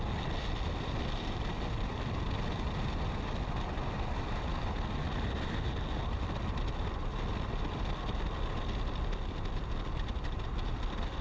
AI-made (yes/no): no